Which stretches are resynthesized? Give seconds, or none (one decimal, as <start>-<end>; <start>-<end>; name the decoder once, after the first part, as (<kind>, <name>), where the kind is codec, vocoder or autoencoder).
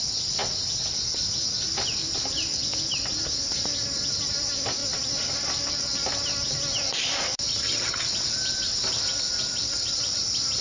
7.5-8.1 (vocoder, HiFi-GAN)